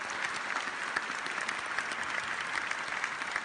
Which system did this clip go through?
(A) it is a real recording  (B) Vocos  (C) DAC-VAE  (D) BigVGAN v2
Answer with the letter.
A